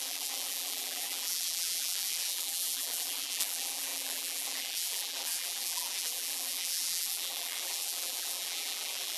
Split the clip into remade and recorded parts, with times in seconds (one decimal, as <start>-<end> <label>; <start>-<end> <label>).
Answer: 0.0-9.2 remade